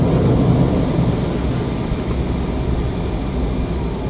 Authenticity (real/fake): real